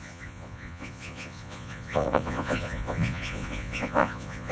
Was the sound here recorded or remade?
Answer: remade